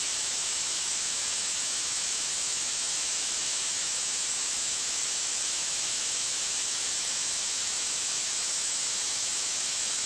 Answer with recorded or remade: remade